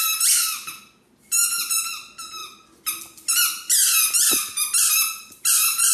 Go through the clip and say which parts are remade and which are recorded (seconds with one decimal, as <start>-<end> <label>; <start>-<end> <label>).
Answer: 0.0-5.9 recorded